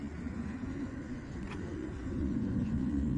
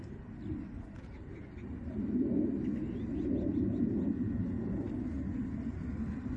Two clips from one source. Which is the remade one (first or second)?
first